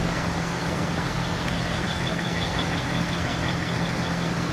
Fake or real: fake